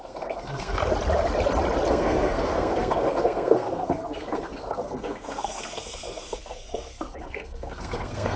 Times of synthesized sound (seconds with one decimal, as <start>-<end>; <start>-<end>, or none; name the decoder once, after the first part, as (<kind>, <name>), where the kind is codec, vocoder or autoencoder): 0.0-0.8 (codec, SNAC); 1.9-8.4